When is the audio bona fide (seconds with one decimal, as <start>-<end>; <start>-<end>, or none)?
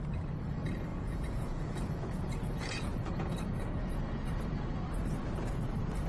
0.0-0.9; 4.0-6.1